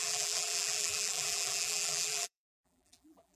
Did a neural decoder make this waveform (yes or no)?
yes